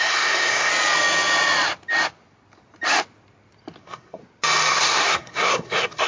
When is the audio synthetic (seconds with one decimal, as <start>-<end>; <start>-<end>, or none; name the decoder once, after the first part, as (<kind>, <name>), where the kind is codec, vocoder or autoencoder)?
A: 0.0-0.7 (codec, SNAC); 3.8-4.2; 4.7-6.1